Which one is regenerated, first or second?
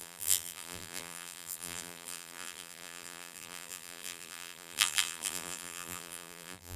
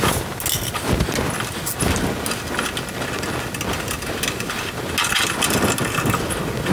first